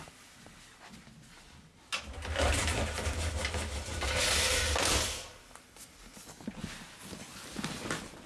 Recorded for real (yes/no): yes